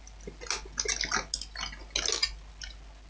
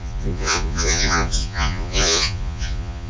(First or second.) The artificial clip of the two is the second